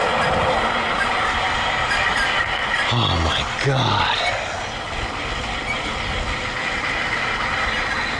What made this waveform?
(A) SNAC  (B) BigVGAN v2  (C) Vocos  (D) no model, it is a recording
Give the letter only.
D